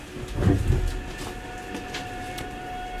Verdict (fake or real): real